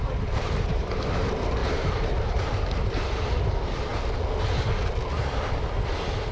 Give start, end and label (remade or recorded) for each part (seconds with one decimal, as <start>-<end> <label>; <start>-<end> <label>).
0.0-3.9 remade; 3.9-6.3 recorded